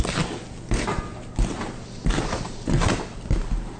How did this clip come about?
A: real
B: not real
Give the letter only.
A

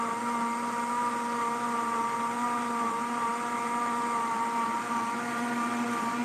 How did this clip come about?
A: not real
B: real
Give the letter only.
B